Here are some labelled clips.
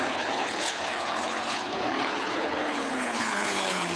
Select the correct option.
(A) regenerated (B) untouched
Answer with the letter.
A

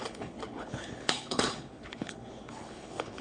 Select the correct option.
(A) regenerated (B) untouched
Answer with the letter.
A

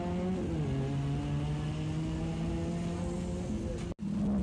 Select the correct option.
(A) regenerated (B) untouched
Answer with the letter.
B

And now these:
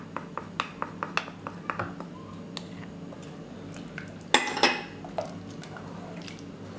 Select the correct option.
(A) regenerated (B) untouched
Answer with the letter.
B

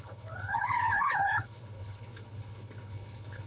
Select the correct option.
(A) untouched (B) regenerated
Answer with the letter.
B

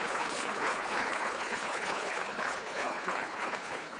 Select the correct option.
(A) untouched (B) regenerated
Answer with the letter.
B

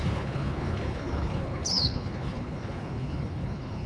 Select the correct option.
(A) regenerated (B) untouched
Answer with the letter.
A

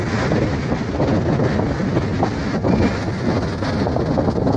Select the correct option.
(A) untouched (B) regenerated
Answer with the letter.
A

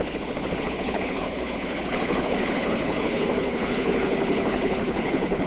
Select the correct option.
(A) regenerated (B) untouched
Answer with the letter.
A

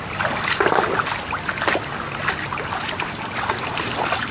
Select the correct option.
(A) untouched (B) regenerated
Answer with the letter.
A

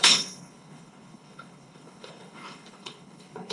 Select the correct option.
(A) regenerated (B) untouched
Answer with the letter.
A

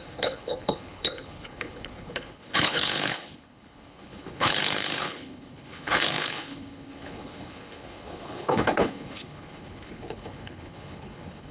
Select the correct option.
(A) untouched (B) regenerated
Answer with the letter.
B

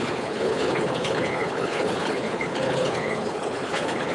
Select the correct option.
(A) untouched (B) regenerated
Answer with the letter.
B